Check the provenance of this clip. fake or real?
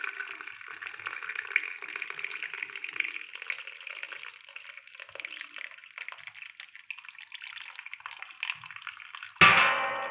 real